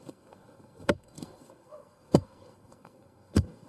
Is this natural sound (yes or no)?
no